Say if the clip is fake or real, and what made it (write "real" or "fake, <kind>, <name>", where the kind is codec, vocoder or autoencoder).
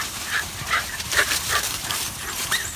fake, vocoder, BigVGAN v2